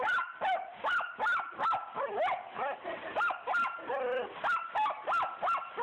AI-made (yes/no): no